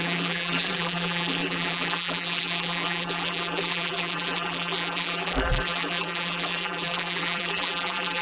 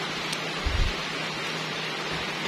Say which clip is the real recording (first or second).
second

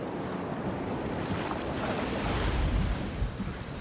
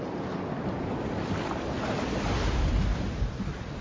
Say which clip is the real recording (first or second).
second